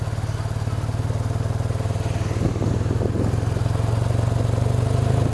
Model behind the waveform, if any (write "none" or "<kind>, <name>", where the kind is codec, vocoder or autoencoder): none